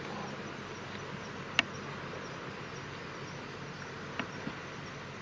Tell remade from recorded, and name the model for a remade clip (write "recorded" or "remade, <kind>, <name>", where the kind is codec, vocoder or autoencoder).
recorded